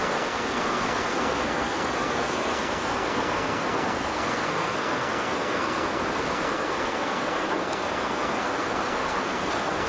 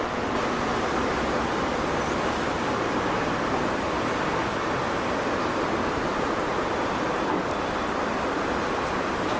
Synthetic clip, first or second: first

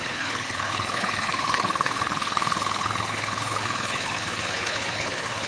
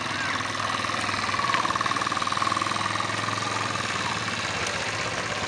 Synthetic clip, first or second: first